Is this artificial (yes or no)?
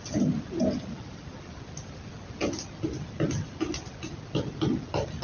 no